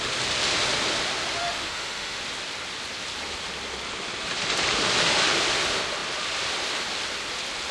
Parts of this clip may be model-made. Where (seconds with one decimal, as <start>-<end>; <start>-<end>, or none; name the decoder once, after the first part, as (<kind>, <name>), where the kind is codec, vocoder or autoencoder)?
1.4-2.2 (autoencoder, DAC-VAE)